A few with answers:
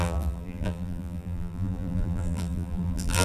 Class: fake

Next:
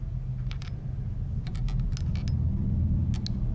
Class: real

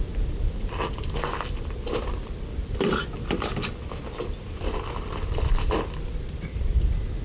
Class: fake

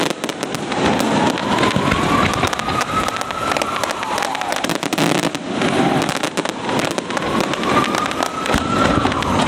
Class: real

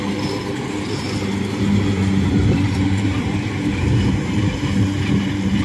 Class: fake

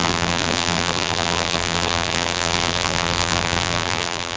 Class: fake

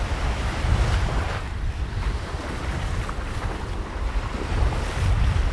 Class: fake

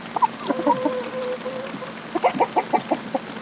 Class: real